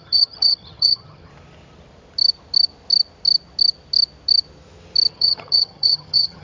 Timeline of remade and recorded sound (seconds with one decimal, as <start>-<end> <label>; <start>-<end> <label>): 0.0-1.3 remade; 1.3-5.1 recorded; 5.1-6.4 remade